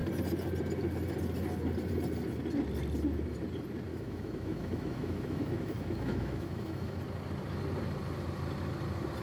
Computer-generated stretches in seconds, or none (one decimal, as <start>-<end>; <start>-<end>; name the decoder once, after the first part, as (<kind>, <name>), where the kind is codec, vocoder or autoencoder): 3.9-7.0 (autoencoder, DAC-VAE)